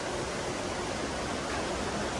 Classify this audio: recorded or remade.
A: recorded